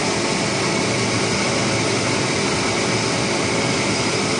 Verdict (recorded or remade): recorded